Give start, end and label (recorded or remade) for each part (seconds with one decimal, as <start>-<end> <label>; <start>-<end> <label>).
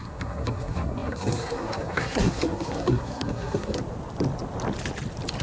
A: 0.0-3.8 remade; 3.8-5.4 recorded